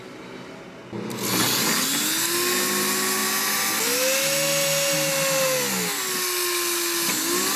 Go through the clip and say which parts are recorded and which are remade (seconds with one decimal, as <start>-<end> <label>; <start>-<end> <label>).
0.0-7.6 recorded

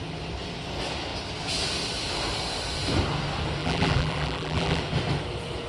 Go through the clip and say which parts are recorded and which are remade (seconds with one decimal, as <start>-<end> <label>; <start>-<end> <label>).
0.0-3.6 recorded; 3.6-4.8 remade; 4.8-5.7 recorded

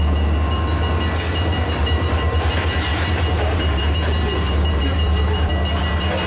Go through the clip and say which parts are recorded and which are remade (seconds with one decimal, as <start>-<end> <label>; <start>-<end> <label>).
0.0-1.8 recorded; 1.8-2.5 remade; 2.5-2.9 recorded; 2.9-5.5 remade; 5.5-6.3 recorded

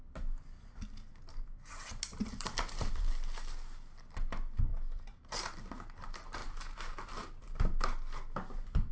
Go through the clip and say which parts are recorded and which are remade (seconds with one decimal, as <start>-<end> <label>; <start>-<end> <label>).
0.0-2.1 recorded; 2.1-3.1 remade; 3.1-4.7 recorded; 4.7-5.7 remade; 5.7-8.9 recorded

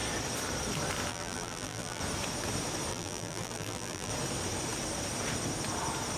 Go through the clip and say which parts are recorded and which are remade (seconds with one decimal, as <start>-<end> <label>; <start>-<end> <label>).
0.0-1.1 recorded; 1.1-2.0 remade; 2.0-2.9 recorded; 2.9-4.1 remade; 4.1-6.2 recorded